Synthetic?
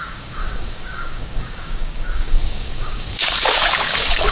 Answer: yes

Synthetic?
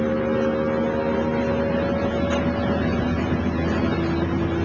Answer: no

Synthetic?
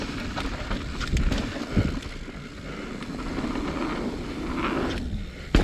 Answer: no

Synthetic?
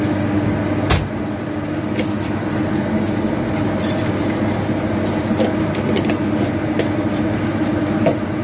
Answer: no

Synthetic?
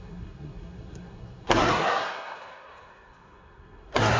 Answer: yes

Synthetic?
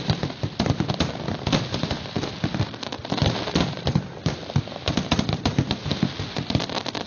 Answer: no